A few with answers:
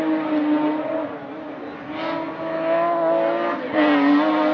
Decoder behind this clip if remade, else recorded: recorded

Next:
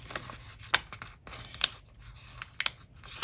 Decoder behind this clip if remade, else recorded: recorded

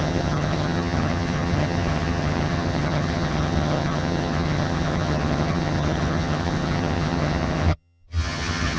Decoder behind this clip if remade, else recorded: remade, vocoder, HiFi-GAN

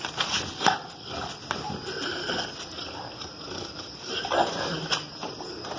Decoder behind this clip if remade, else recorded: recorded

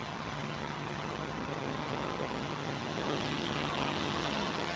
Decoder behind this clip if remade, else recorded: remade, vocoder, HiFi-GAN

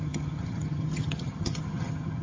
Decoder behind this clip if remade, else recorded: remade, vocoder, HiFi-GAN